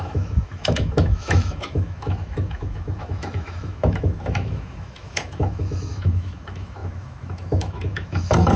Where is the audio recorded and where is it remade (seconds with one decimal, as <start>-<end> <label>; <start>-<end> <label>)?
0.0-8.6 remade